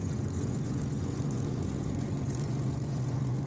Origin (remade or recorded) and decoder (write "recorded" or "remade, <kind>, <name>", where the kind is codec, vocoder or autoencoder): remade, vocoder, Vocos